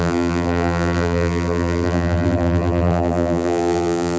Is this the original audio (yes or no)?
no